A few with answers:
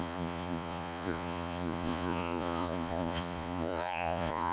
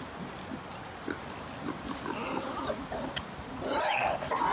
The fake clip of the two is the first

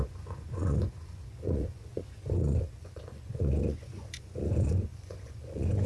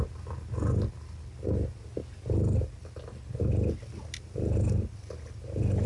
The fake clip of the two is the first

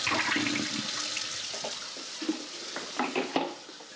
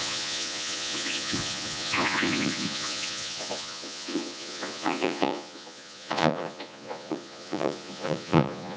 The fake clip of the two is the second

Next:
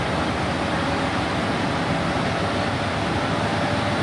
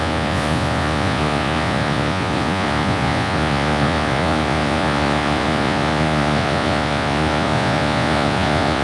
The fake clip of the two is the second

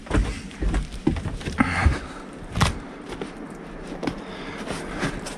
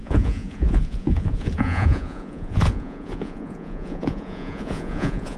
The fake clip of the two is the second